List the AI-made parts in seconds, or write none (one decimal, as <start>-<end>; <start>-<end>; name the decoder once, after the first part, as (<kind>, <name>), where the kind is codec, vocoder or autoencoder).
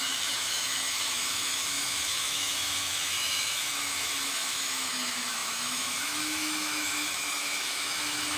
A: 0.0-8.4 (autoencoder, DAC-VAE)